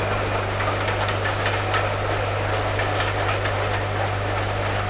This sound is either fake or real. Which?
real